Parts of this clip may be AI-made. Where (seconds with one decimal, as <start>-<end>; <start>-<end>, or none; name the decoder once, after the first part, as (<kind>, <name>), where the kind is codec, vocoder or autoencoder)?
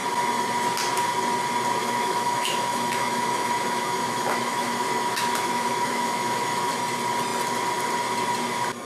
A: 1.8-6.8 (autoencoder, DAC-VAE)